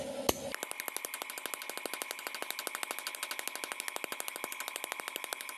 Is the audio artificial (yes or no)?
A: no